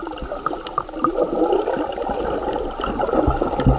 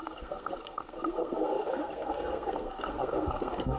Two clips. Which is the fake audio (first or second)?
second